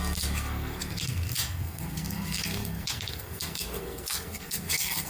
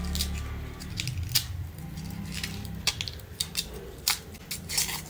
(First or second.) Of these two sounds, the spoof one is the first